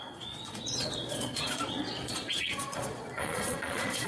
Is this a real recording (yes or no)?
no